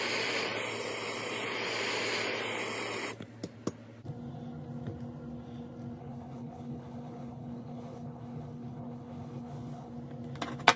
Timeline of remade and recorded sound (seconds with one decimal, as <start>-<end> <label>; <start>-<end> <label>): 0.0-6.0 recorded; 6.0-9.9 remade; 9.9-10.8 recorded